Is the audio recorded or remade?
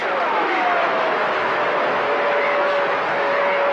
remade